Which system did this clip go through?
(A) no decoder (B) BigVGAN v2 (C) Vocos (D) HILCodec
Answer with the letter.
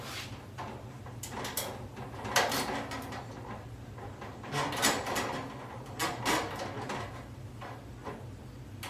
A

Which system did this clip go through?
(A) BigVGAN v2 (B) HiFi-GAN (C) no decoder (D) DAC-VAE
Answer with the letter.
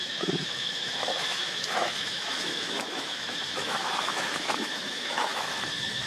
D